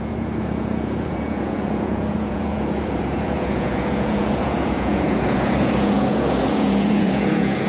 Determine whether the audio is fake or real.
fake